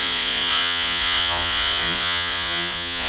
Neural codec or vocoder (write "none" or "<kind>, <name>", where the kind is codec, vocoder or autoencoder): vocoder, Vocos